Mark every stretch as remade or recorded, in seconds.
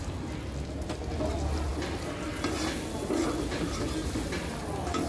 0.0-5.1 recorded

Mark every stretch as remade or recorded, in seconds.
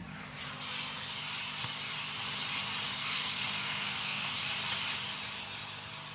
0.0-3.0 recorded; 3.0-4.3 remade; 4.3-6.1 recorded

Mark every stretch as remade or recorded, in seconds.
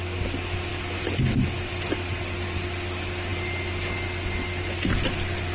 0.0-5.5 recorded